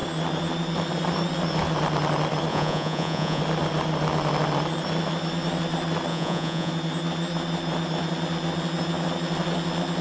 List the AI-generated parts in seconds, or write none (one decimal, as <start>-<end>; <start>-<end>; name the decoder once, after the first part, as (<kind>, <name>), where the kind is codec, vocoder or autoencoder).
2.5-3.4 (vocoder, Vocos); 6.1-6.7